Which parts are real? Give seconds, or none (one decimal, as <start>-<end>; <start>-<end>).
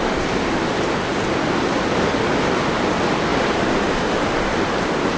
0.0-5.2